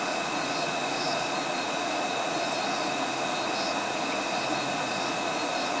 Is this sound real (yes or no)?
no